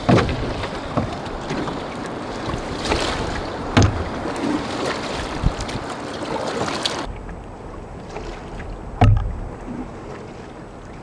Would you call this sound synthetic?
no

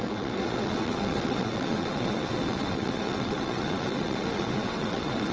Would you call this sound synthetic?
yes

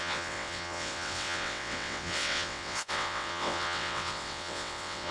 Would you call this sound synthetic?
yes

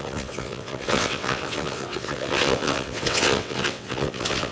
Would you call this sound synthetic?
yes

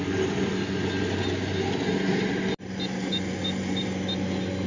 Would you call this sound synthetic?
no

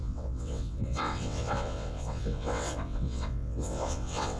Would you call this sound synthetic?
yes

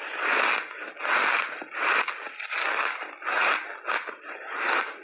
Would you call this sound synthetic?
no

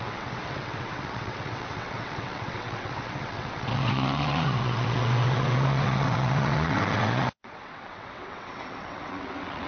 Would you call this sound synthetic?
yes